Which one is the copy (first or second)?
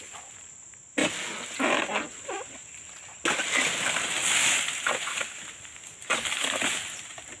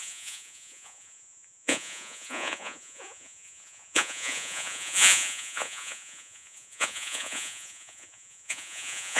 second